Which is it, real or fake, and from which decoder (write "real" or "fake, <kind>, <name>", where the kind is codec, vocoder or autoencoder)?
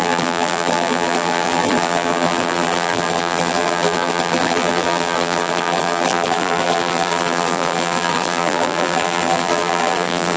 fake, vocoder, BigVGAN v2